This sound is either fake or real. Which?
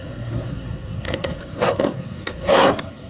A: fake